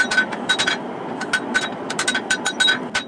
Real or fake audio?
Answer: real